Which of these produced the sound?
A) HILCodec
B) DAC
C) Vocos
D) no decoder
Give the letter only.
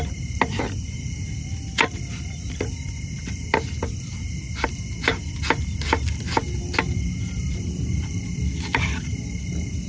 D